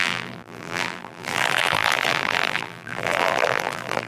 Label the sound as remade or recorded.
remade